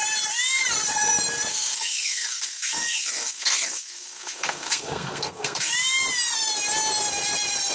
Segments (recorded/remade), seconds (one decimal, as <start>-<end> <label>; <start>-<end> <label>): 0.0-1.5 recorded; 1.5-5.7 remade; 5.7-7.7 recorded